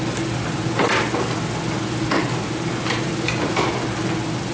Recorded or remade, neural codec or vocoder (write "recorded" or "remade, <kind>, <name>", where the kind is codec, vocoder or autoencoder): recorded